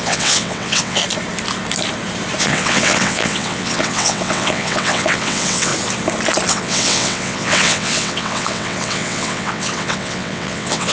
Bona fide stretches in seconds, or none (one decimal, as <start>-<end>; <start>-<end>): 1.0-2.4; 5.7-6.5